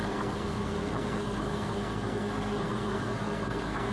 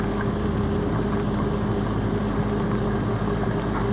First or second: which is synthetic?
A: first